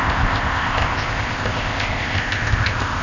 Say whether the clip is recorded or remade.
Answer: remade